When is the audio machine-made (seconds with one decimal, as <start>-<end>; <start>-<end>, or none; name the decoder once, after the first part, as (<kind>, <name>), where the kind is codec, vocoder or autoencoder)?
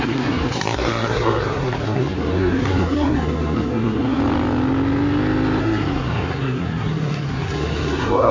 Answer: 0.0-4.2 (codec, SNAC); 5.6-8.3